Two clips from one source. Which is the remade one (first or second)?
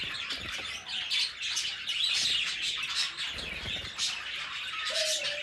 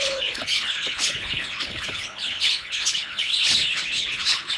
second